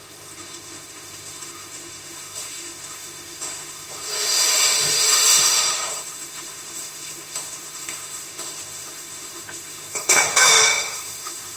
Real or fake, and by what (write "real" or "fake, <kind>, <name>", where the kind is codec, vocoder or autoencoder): fake, autoencoder, DAC-VAE